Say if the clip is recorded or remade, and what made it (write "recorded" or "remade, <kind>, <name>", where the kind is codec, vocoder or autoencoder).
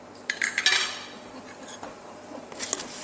recorded